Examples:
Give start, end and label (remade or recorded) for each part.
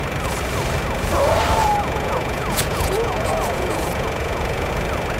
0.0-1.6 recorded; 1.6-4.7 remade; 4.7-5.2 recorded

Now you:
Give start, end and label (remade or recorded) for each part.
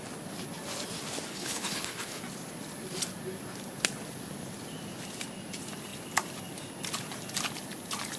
0.0-1.3 recorded; 1.3-2.2 remade; 2.2-8.2 recorded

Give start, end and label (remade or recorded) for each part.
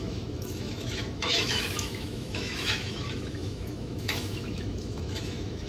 0.0-5.7 remade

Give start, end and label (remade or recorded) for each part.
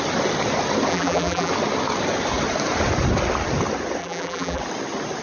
0.0-0.9 recorded; 0.9-1.5 remade; 1.5-4.0 recorded; 4.0-4.6 remade; 4.6-5.2 recorded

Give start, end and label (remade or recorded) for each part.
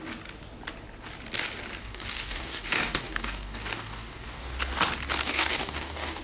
0.0-1.8 recorded; 1.8-4.4 remade; 4.4-5.2 recorded; 5.2-6.2 remade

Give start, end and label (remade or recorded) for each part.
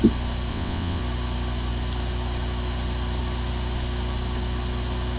0.0-0.5 recorded; 0.5-1.0 remade; 1.0-5.2 recorded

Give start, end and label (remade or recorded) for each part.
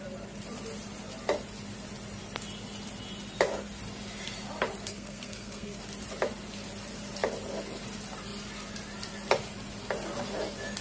0.0-4.9 recorded; 4.9-5.8 remade; 5.8-10.8 recorded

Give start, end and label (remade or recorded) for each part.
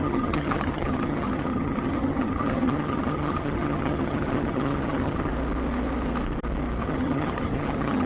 0.0-5.3 remade; 5.3-6.8 recorded; 6.8-8.1 remade